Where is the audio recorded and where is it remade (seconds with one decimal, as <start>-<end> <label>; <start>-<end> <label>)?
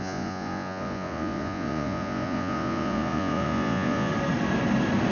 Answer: 0.0-4.1 remade; 4.1-5.1 recorded